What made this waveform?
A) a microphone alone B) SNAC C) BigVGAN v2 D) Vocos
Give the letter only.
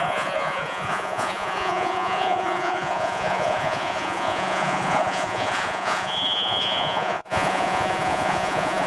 D